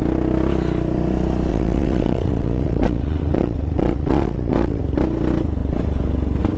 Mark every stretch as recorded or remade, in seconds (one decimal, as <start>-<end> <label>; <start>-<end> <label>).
0.0-1.5 recorded; 1.5-4.8 remade; 4.8-6.6 recorded